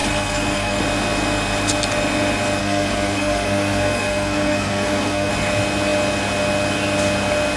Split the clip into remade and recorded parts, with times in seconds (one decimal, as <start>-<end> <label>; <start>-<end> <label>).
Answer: 0.0-0.8 remade; 0.8-2.6 recorded; 2.6-5.3 remade; 5.3-7.6 recorded